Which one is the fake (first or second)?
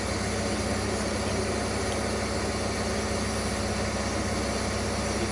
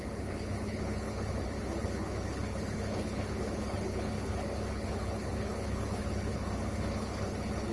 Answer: second